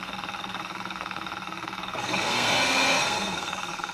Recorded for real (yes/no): no